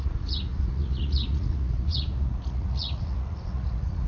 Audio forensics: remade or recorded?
remade